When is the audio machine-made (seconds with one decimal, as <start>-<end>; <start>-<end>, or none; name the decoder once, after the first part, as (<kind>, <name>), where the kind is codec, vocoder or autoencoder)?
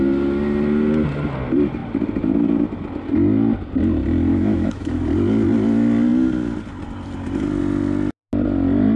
4.3-5.0 (autoencoder, DAC-VAE)